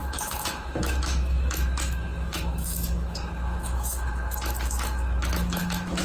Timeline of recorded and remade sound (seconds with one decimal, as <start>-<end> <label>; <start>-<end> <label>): 0.0-6.0 remade